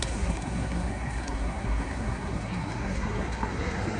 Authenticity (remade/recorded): remade